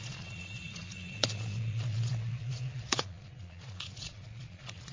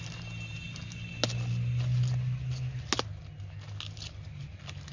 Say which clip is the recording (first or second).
second